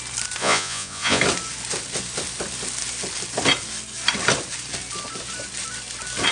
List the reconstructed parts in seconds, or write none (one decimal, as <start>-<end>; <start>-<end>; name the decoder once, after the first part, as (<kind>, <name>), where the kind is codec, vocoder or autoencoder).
0.4-1.2 (vocoder, Vocos)